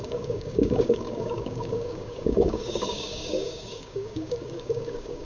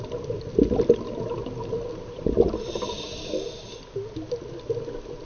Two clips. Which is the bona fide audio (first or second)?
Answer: second